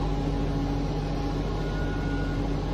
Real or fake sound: real